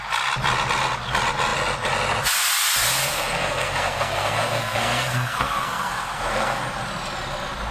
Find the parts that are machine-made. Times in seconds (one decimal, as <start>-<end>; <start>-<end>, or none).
3.0-6.6